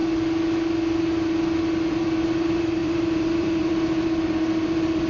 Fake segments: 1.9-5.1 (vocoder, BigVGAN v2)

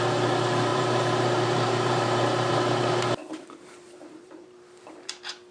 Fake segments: 0.7-2.5 (vocoder, BigVGAN v2); 3.2-5.1

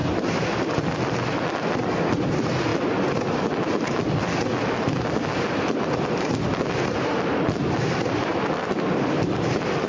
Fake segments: 0.0-0.7 (vocoder, BigVGAN v2); 8.3-9.9

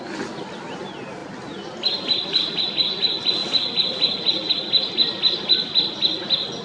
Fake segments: none

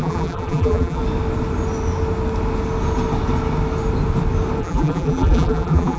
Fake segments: 0.0-1.0 (vocoder, BigVGAN v2); 4.6-6.0

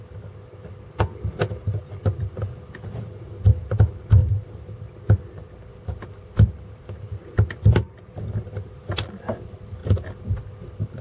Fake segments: none